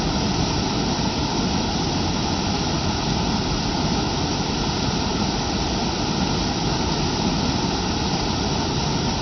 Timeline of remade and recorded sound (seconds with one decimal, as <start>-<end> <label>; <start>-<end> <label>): 0.0-9.2 recorded